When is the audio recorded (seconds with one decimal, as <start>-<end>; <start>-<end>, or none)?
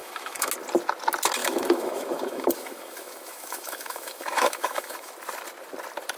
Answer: 0.5-1.4; 5.1-6.2